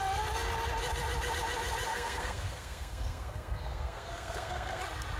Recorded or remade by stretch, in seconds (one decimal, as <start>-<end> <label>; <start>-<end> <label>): 0.0-1.9 recorded; 1.9-4.8 remade; 4.8-5.2 recorded